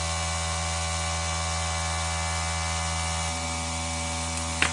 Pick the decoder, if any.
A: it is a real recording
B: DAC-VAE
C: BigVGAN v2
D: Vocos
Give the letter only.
A